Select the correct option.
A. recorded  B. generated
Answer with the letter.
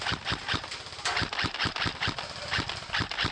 A